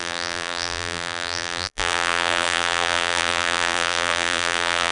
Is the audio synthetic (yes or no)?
yes